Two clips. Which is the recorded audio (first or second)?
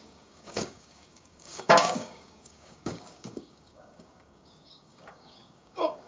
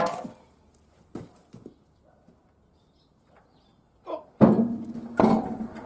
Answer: second